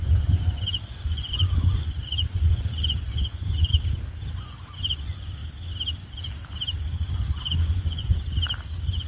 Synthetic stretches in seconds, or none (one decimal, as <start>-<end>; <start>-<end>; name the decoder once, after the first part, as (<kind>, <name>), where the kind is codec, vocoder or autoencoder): 0.0-3.7 (vocoder, Vocos); 4.4-5.4; 7.1-8.1